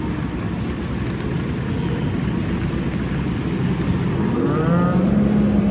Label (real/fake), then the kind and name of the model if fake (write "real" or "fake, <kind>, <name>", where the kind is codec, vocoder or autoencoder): real